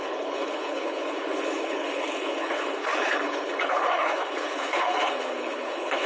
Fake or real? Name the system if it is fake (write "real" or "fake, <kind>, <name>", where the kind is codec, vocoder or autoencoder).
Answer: fake, codec, HILCodec